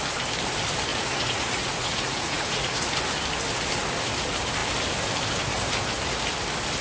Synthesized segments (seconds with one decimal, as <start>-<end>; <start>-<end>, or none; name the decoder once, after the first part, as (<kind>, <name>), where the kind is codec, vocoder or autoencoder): 0.9-2.9 (vocoder, Vocos)